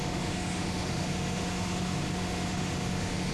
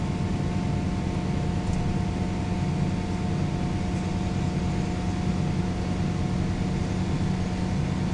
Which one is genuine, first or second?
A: second